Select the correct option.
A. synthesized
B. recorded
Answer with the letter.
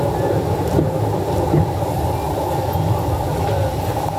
B